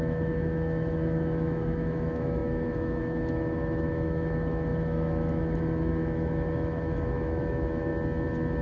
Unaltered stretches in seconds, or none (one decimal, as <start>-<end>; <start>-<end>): 7.9-8.6